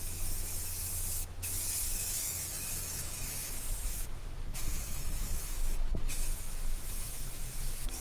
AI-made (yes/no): yes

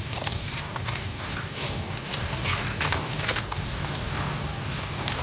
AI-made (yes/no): yes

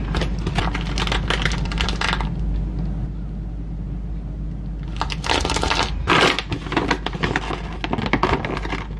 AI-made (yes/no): no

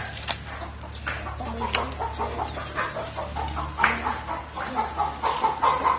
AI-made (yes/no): no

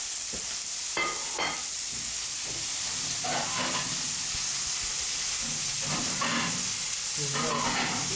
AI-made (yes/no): no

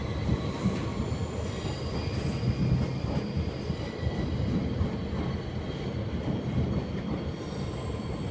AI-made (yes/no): no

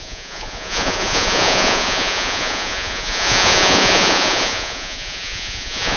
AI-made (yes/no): yes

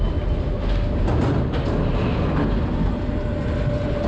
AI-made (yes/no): no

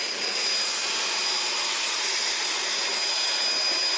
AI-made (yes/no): no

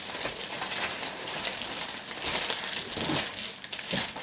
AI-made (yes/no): no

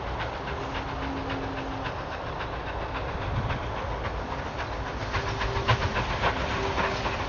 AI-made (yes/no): no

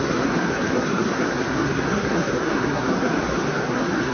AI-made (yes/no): yes